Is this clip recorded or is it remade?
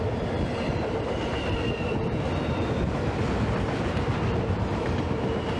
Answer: recorded